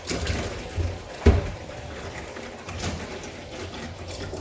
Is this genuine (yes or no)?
yes